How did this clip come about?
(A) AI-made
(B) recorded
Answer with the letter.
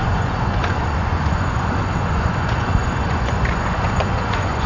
A